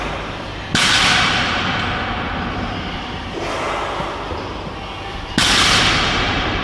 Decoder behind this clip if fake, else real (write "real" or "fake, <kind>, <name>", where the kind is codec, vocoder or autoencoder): real